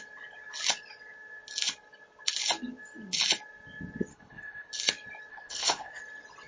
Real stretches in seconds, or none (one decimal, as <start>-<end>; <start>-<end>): 0.0-4.1; 4.7-5.3; 6.0-6.5